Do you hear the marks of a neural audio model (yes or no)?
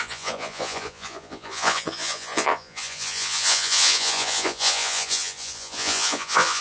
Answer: yes